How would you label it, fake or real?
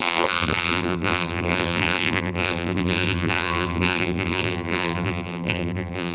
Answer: fake